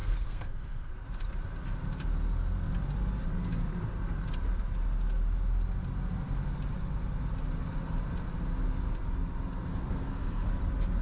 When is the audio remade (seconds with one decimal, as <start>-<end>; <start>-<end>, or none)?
0.0-0.9; 9.7-10.5